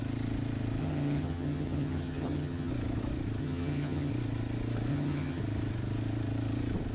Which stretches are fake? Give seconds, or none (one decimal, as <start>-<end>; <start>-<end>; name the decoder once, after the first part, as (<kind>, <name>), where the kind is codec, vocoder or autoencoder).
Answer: 0.8-2.7 (vocoder, HiFi-GAN); 3.4-4.1; 4.9-5.4